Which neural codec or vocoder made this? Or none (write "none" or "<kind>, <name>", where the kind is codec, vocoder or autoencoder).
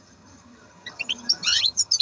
vocoder, HiFi-GAN